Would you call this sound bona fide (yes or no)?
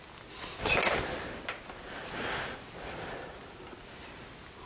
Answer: yes